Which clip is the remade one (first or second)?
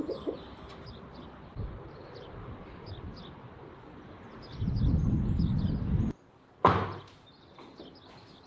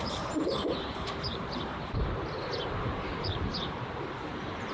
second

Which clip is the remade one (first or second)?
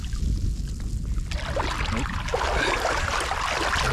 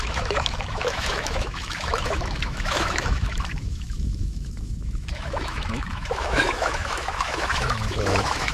second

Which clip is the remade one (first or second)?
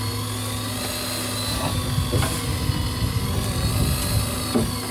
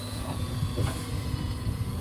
second